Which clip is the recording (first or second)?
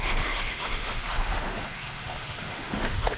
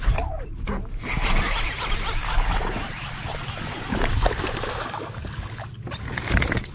second